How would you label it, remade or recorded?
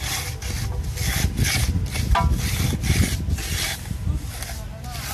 recorded